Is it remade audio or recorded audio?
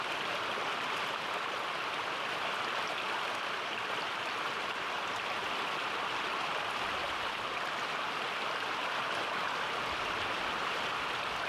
recorded